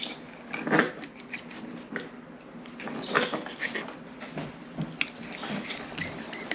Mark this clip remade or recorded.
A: recorded